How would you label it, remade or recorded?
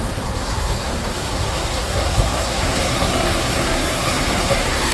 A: remade